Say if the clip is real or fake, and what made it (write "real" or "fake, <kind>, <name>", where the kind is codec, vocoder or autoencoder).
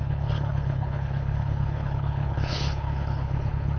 fake, codec, HILCodec